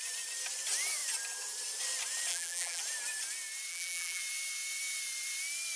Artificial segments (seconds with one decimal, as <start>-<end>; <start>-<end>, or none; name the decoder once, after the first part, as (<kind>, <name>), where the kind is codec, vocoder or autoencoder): 2.3-2.8 (vocoder, BigVGAN v2); 3.7-4.2